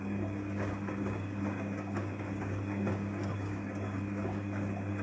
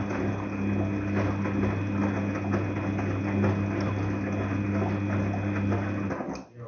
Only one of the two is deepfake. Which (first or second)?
first